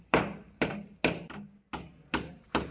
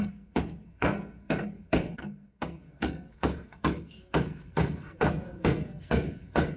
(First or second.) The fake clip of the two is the second